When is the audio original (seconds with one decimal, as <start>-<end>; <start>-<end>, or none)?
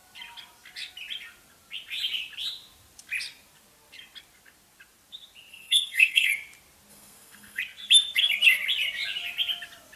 0.0-5.5; 6.3-6.9; 7.6-10.0